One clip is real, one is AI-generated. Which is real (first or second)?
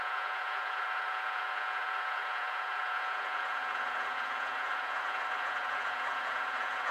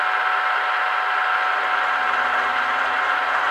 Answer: second